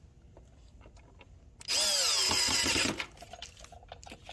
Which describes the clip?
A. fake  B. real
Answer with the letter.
B